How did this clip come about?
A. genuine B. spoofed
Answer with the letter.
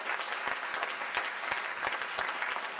A